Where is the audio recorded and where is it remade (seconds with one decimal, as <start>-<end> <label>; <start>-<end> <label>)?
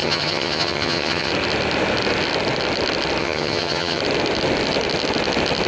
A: 0.0-1.3 remade; 1.3-3.2 recorded; 3.2-4.0 remade; 4.0-5.7 recorded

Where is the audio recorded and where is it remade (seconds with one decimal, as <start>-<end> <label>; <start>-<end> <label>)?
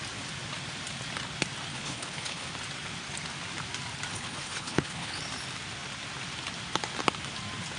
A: 0.0-1.7 recorded; 1.7-2.5 remade; 2.5-4.1 recorded; 4.1-5.2 remade; 5.2-7.8 recorded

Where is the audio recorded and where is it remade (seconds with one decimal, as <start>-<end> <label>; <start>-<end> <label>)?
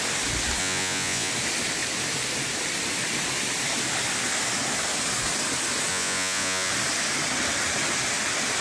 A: 0.0-0.6 recorded; 0.6-1.3 remade; 1.3-5.9 recorded; 5.9-6.7 remade; 6.7-8.6 recorded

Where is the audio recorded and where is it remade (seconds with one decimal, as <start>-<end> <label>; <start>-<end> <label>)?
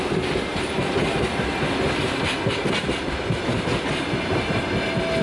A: 0.0-5.2 recorded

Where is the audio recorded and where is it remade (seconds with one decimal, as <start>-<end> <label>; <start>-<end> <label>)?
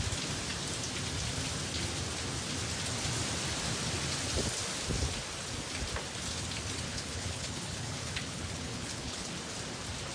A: 0.0-6.9 recorded; 6.9-9.3 remade; 9.3-10.1 recorded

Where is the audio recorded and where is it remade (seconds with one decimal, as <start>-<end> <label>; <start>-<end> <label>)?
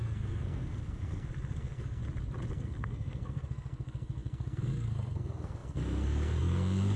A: 0.0-2.0 remade; 2.0-2.5 recorded; 2.5-7.0 remade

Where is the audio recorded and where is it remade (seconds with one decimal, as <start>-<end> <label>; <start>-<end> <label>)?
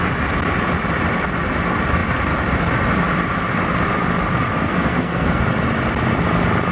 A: 0.0-4.5 recorded; 4.5-5.4 remade; 5.4-6.7 recorded